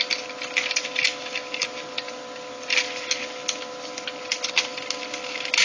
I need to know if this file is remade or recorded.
recorded